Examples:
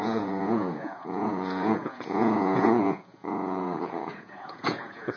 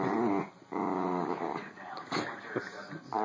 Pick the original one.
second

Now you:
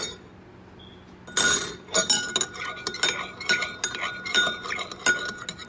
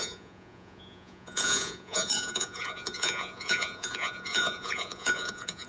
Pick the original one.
first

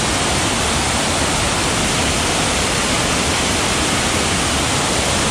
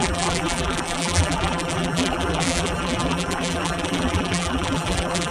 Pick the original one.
first